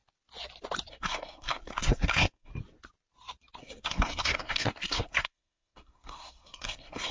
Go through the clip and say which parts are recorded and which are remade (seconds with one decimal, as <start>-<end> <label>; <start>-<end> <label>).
0.0-0.9 recorded; 0.9-2.5 remade; 2.5-3.6 recorded; 3.6-7.1 remade